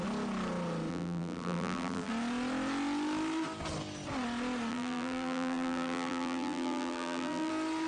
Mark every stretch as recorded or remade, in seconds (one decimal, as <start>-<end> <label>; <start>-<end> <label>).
0.0-0.9 recorded; 0.9-2.1 remade; 2.1-4.7 recorded; 4.7-7.5 remade; 7.5-7.9 recorded